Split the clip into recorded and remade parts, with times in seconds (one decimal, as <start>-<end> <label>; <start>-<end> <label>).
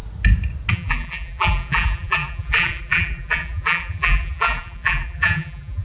0.0-0.7 recorded; 0.7-5.8 remade